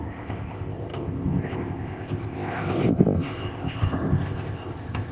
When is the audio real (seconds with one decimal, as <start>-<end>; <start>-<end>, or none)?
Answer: none